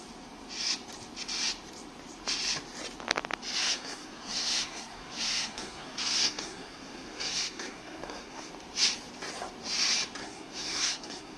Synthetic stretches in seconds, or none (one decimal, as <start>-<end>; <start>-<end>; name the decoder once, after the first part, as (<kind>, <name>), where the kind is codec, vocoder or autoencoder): 3.6-8.5 (codec, SNAC); 10.2-11.4